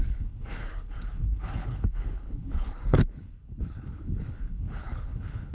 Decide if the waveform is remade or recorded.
remade